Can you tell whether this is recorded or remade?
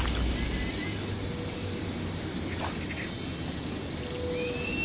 recorded